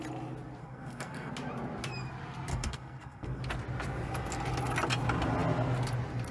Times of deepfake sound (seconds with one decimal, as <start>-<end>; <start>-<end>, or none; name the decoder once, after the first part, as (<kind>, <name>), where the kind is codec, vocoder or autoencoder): 0.6-1.3 (codec, SNAC); 2.5-3.4